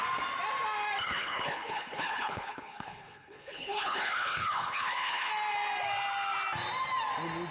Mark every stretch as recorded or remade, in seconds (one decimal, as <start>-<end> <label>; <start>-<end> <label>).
0.0-1.0 recorded; 1.0-5.3 remade; 5.3-7.5 recorded